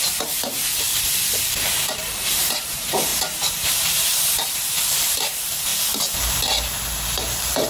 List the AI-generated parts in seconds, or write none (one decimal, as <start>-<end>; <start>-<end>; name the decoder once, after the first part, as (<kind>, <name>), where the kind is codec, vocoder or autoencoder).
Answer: 0.0-5.7 (vocoder, BigVGAN v2)

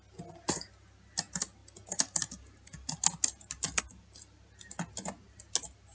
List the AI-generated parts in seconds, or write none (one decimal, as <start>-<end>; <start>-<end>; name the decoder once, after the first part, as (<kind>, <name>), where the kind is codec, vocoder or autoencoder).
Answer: none

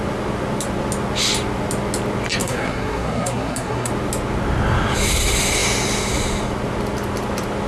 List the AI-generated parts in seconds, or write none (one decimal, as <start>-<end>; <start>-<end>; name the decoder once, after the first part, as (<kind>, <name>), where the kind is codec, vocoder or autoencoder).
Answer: 2.4-3.9 (codec, SNAC)